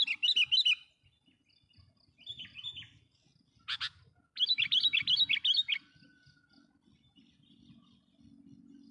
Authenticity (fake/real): real